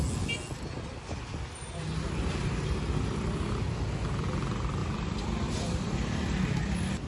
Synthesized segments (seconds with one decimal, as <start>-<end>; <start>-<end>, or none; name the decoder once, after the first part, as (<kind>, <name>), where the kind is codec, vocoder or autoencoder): none